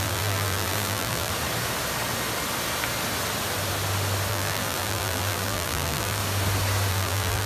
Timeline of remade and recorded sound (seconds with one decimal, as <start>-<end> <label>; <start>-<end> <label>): 0.0-1.3 remade; 1.3-4.3 recorded; 4.3-6.2 remade; 6.2-6.9 recorded; 6.9-7.5 remade